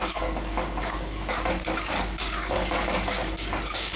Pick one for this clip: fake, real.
fake